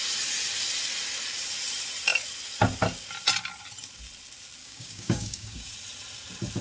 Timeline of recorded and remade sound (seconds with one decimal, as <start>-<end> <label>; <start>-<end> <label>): 0.0-4.6 recorded; 4.6-5.7 remade; 5.7-6.6 recorded